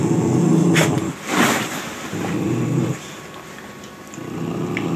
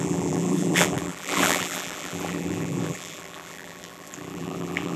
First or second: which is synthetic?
second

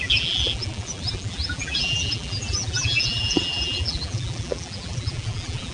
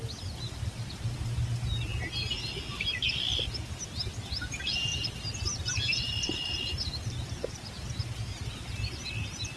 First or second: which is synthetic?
first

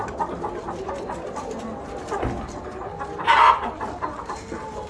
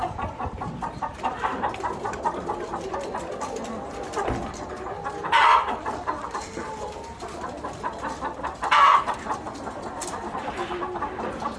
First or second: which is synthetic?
second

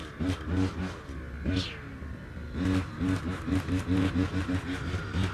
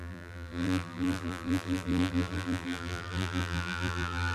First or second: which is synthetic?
second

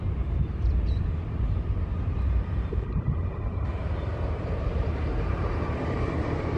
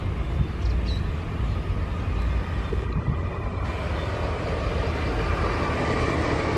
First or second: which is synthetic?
first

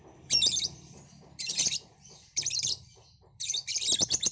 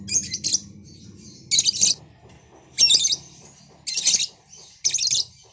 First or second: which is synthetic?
first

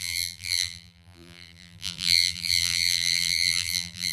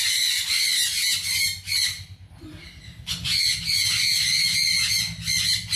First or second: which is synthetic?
first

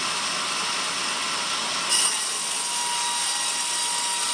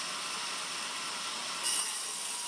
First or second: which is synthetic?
second